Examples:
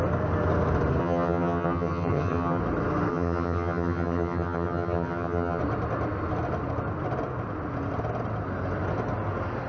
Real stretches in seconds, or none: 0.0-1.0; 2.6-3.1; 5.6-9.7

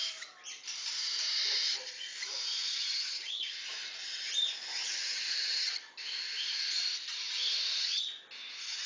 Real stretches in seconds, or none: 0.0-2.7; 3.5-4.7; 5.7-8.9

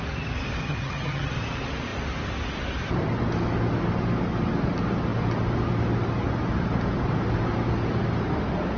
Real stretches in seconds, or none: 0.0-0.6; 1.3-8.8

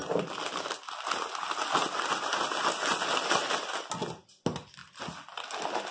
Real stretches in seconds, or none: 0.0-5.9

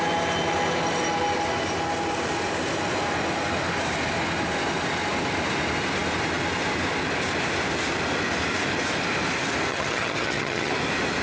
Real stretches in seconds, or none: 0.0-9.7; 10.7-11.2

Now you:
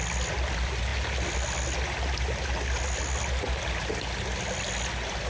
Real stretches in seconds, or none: 0.0-5.3

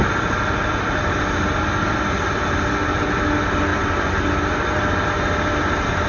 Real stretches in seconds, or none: 0.0-6.1